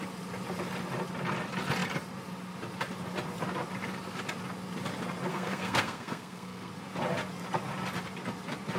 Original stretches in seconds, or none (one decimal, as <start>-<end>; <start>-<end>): 0.0-5.3; 6.7-8.8